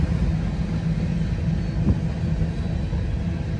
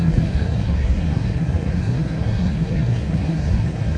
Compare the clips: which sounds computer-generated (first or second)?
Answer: second